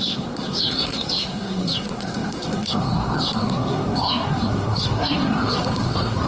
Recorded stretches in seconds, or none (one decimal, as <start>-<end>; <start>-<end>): none